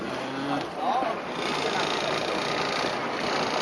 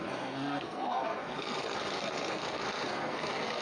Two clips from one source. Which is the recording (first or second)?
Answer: first